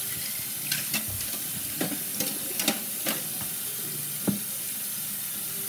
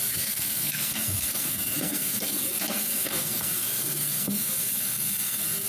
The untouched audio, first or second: first